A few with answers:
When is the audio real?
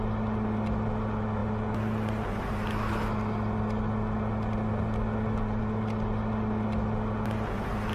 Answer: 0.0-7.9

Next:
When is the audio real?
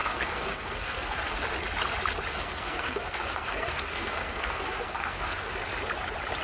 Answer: 1.4-2.3; 5.5-6.4